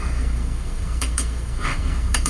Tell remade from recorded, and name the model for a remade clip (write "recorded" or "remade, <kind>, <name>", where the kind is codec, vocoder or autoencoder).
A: remade, codec, SNAC